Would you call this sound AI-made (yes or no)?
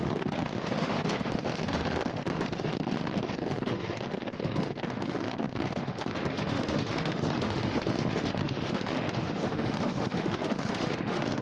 yes